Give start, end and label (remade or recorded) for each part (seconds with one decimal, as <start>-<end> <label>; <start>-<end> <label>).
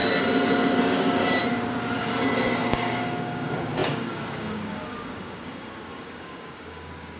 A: 0.0-0.8 recorded; 0.8-1.4 remade; 1.4-2.6 recorded; 2.6-7.2 remade